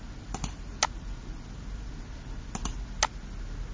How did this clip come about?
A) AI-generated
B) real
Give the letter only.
B